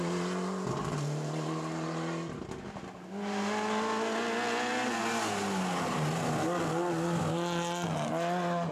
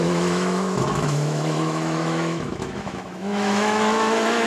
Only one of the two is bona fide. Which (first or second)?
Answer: first